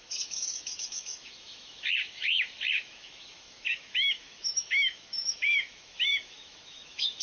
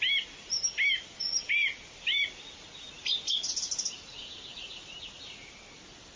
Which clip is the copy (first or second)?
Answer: first